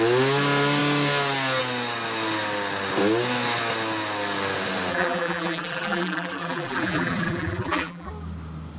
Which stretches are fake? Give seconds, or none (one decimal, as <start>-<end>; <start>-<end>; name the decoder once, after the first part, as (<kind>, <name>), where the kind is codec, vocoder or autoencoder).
4.9-8.1 (vocoder, BigVGAN v2)